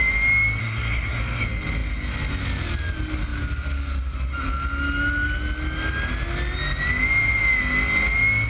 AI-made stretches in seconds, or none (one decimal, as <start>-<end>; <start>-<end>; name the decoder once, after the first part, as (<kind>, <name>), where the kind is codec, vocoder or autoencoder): 0.6-1.2 (codec, SNAC)